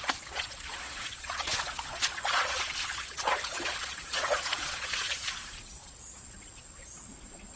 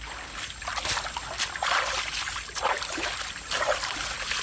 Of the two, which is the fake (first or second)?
first